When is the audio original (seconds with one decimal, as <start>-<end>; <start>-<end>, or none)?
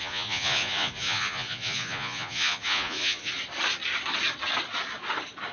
3.3-5.5